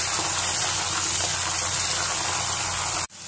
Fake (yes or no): no